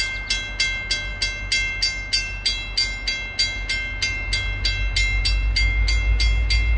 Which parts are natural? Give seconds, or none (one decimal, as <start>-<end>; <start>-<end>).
0.0-6.8